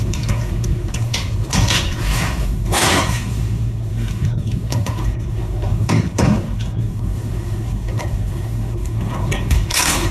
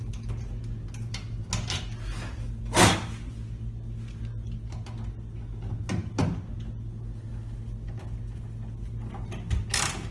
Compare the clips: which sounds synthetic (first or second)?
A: first